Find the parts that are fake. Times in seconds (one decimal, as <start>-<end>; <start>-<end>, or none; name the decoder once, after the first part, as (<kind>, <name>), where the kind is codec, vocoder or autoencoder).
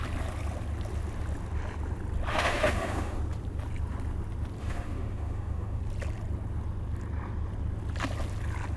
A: 2.3-3.2 (autoencoder, DAC-VAE); 4.6-5.8